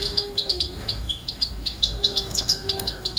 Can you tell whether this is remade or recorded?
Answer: remade